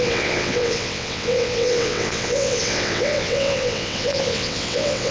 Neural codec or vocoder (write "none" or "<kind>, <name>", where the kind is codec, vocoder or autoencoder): vocoder, WaveNeXt